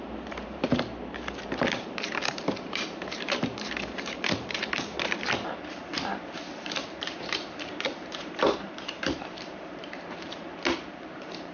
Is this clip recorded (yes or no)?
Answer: no